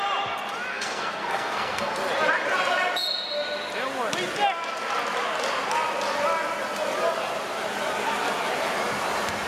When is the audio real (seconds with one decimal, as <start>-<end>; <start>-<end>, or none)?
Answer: 0.0-0.7; 1.9-9.5